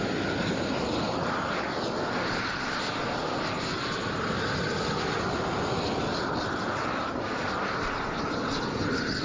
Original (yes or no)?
yes